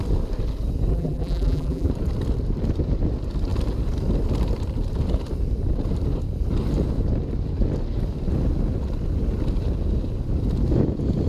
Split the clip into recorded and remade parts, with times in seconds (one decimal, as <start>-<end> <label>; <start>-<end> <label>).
0.0-0.9 recorded; 0.9-1.9 remade; 1.9-11.3 recorded